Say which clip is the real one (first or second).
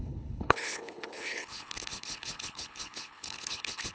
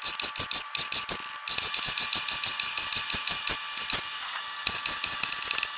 second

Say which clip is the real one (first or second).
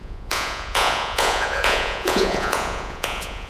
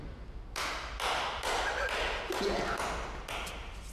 second